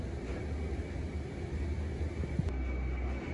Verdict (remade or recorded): recorded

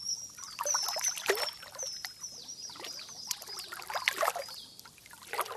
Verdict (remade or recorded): recorded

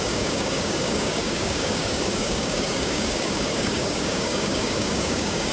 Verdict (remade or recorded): remade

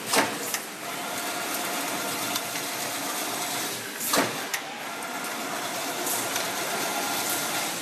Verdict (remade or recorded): recorded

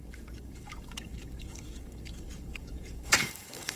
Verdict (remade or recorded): remade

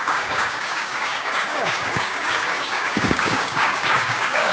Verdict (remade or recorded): remade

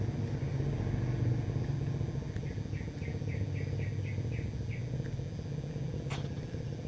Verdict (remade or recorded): recorded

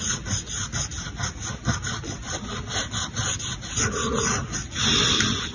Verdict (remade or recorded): recorded